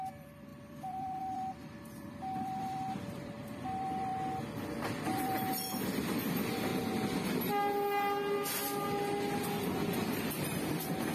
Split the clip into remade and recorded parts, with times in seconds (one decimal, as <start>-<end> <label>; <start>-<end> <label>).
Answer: 0.0-4.1 remade; 4.1-4.9 recorded; 4.9-6.7 remade; 6.7-9.6 recorded; 9.6-11.1 remade